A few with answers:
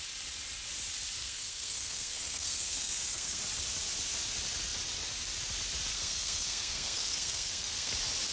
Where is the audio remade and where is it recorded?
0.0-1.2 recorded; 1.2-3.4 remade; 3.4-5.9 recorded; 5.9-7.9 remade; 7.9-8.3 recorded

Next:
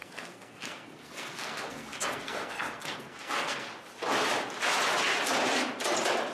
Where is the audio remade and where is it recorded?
0.0-3.7 remade; 3.7-6.3 recorded

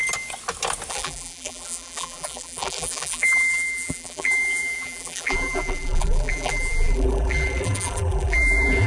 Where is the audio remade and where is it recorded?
0.0-0.9 recorded; 0.9-8.9 remade

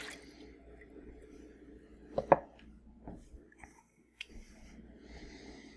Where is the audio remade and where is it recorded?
0.0-3.8 recorded; 3.8-4.3 remade; 4.3-5.8 recorded

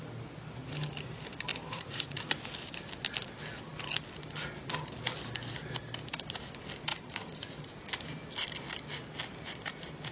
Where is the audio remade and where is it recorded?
0.0-1.5 recorded; 1.5-2.2 remade; 2.2-6.9 recorded; 6.9-7.8 remade; 7.8-10.1 recorded

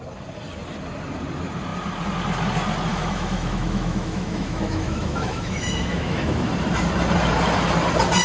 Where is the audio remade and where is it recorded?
0.0-2.9 recorded; 2.9-6.5 remade; 6.5-8.2 recorded

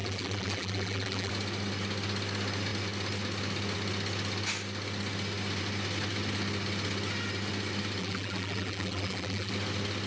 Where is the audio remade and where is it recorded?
0.0-1.3 remade; 1.3-8.0 recorded; 8.0-9.5 remade; 9.5-10.1 recorded